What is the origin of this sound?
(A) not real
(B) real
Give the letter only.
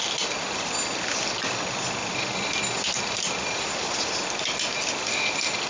B